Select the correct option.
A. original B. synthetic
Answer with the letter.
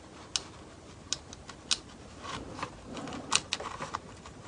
A